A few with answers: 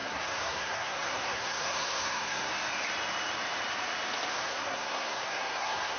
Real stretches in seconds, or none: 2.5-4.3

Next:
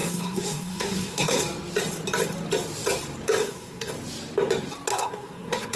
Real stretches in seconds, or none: 1.4-3.4; 3.9-4.9

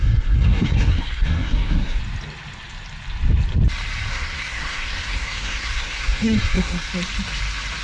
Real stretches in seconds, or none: 2.0-4.1; 6.9-7.8

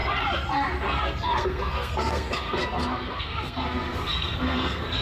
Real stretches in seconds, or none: 0.0-0.8

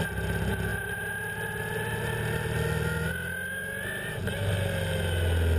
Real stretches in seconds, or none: 0.0-5.6

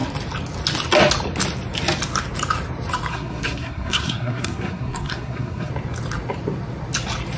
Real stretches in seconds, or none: 0.0-3.1; 5.7-7.4

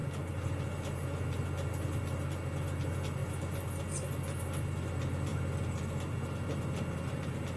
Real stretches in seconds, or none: 0.0-7.6